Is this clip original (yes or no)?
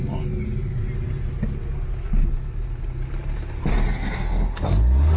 yes